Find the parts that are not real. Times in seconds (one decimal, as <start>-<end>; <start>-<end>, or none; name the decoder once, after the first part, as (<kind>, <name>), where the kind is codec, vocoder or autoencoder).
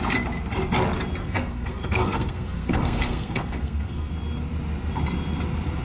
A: 1.2-4.1 (codec, SNAC)